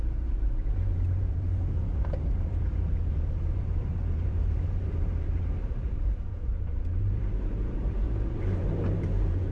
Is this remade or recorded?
remade